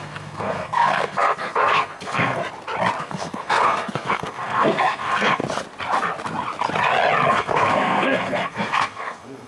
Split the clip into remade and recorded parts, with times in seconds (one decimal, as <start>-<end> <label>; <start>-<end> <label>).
0.0-2.4 remade; 2.4-3.0 recorded; 3.0-5.4 remade; 5.4-7.3 recorded; 7.3-9.5 remade